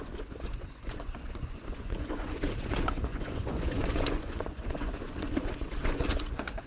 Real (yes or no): no